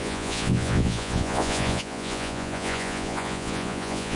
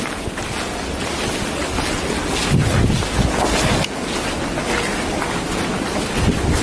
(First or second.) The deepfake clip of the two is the first